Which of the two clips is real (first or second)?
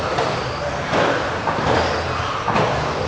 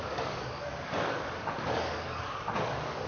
first